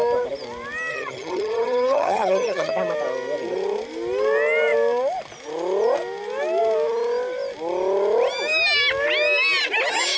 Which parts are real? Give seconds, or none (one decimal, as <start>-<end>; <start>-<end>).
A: 0.0-0.9; 2.7-10.2